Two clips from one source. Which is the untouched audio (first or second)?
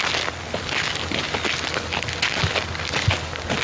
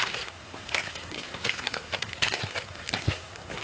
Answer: first